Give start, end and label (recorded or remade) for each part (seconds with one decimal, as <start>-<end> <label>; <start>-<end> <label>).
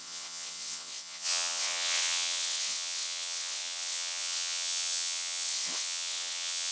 0.0-6.7 remade